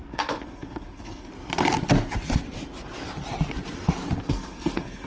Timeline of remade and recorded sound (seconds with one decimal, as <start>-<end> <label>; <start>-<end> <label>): 0.0-1.3 remade; 1.3-4.3 recorded; 4.3-5.1 remade